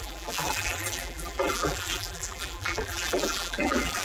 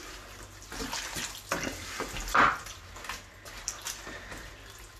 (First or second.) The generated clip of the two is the first